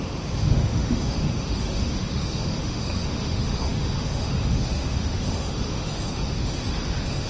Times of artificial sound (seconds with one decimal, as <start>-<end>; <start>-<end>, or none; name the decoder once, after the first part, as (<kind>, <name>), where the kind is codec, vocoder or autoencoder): 0.0-7.3 (autoencoder, DAC-VAE)